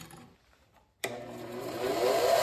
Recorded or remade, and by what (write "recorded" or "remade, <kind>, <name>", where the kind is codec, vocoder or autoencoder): recorded